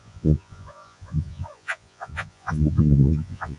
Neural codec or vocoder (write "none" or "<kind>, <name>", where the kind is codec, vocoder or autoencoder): vocoder, Vocos